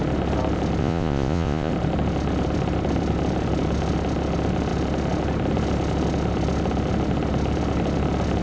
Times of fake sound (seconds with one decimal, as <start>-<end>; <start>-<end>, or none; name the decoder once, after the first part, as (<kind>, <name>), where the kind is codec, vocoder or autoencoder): 0.8-1.7 (vocoder, Vocos)